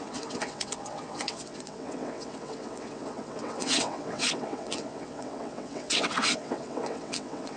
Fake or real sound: fake